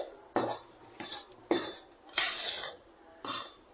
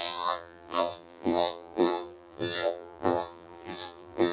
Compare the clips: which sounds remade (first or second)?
second